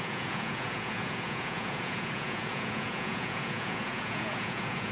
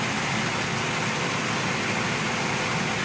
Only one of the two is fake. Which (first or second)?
first